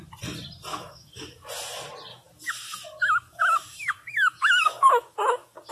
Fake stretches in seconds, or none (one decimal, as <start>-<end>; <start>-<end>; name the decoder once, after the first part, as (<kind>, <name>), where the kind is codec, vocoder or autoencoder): 0.7-1.5 (autoencoder, DAC-VAE); 2.1-5.7